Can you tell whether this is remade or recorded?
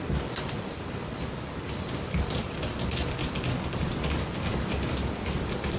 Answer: recorded